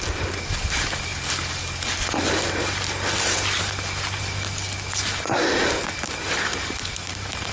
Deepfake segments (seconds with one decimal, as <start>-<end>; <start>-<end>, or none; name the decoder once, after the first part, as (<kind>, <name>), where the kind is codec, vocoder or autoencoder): none